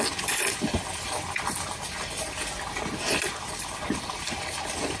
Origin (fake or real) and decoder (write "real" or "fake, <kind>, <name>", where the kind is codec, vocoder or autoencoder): real